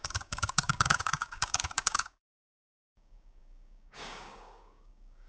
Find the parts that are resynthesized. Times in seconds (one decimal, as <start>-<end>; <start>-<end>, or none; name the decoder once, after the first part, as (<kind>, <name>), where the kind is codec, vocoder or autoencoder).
0.0-5.3 (codec, DAC)